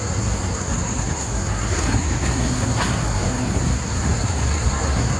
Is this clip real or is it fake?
fake